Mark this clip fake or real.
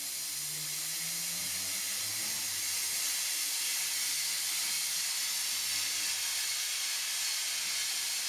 real